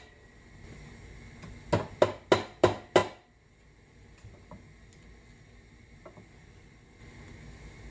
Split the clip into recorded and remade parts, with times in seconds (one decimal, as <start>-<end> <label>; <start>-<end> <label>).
0.0-7.9 recorded